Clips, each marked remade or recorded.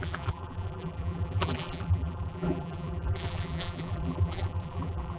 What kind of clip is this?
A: remade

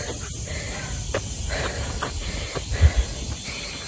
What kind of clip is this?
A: recorded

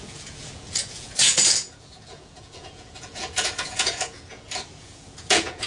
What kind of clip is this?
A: remade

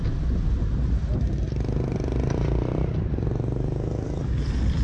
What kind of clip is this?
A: recorded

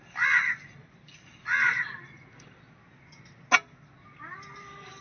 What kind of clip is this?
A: recorded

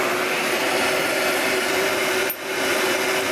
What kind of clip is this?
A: recorded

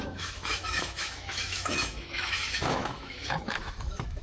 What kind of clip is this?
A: remade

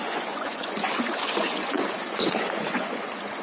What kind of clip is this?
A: remade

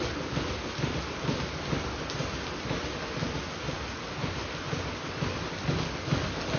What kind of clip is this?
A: recorded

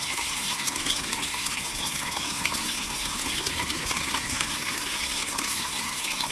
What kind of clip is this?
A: remade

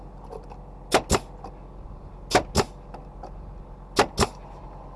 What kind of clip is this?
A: recorded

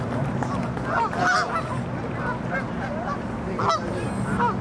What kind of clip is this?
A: recorded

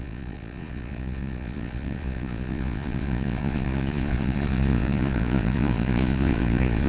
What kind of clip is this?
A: remade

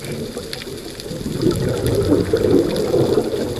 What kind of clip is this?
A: recorded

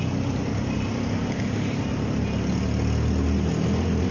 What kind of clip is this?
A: recorded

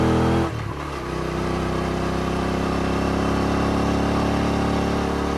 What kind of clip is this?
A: recorded